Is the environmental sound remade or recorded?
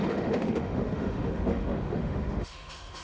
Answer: remade